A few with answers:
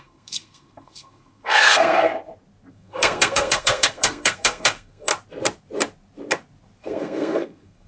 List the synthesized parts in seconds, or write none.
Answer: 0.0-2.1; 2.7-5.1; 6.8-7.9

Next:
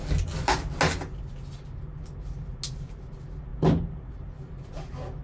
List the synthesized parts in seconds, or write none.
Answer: none

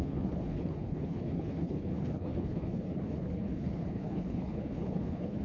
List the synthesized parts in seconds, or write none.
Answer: 0.0-5.4

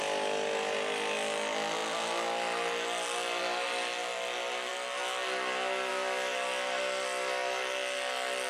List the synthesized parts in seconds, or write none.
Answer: none

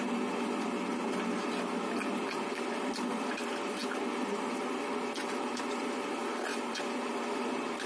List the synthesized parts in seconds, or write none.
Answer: none

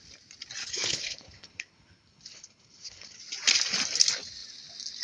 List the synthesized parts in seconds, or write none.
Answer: 0.6-3.2

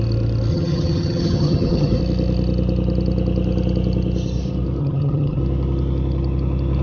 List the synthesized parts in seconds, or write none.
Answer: 0.5-2.0; 4.8-5.4